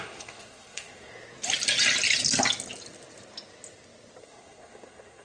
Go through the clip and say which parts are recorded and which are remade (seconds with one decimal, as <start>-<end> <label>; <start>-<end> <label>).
0.0-1.1 remade; 1.1-4.2 recorded; 4.2-5.2 remade